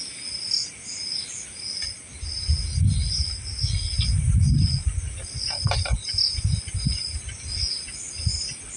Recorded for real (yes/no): yes